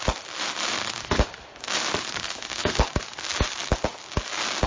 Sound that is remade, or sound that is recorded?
recorded